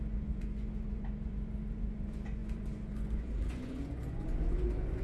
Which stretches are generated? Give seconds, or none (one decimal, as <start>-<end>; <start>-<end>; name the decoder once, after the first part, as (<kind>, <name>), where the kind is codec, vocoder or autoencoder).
0.0-5.0 (vocoder, Vocos)